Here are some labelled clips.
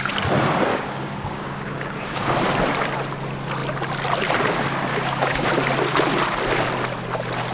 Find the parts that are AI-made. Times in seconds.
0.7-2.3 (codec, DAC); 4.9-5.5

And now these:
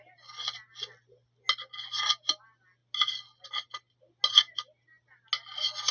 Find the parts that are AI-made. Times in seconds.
none

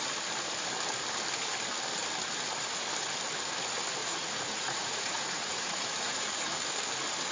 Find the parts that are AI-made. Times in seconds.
4.0-6.6 (vocoder, Vocos)

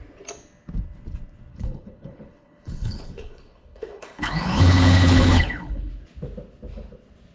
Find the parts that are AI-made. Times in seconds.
1.5-5.9 (codec, HILCodec)

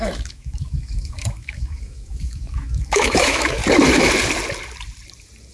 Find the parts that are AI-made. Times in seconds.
0.0-3.6 (autoencoder, DAC-VAE)

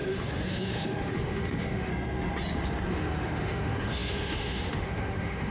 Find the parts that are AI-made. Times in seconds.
0.0-1.9 (autoencoder, DAC-VAE); 2.9-5.5